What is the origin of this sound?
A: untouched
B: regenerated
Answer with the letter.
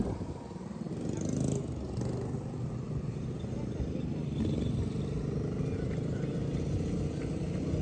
A